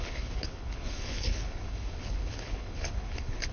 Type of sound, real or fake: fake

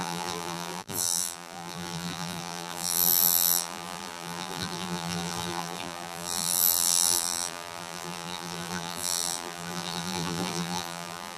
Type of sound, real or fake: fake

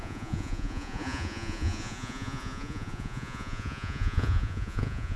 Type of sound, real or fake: fake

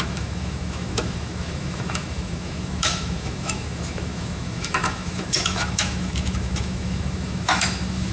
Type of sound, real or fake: fake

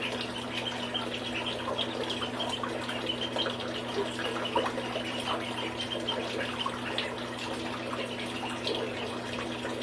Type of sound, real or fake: real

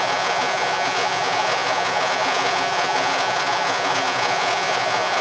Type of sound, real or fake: fake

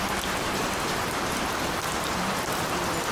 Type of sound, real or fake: real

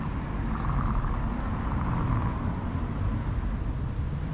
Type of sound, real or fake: real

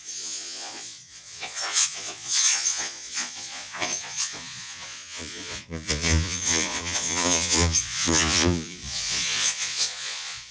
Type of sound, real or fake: fake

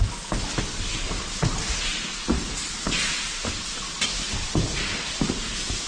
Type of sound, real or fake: real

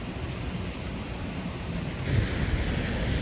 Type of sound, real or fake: real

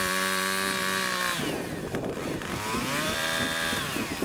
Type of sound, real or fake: fake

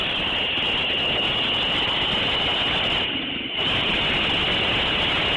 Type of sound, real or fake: real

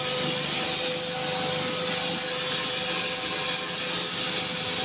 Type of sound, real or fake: real